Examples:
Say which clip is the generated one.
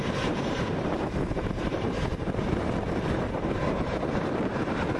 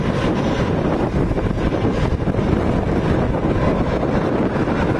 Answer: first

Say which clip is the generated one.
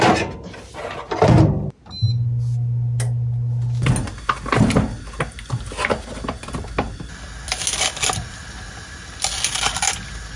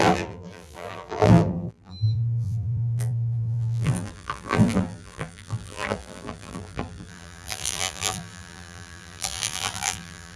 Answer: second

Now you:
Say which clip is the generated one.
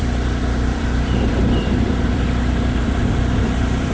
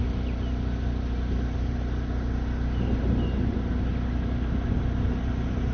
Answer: first